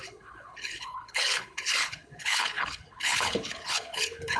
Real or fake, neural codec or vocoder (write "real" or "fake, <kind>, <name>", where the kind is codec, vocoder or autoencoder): fake, codec, HILCodec